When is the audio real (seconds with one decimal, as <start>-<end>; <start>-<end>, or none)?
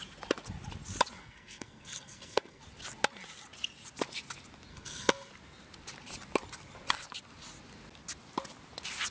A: 0.0-1.2; 2.6-4.7; 5.3-9.1